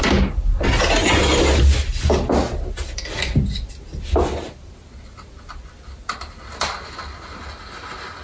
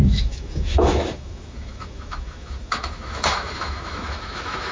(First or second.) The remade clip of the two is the second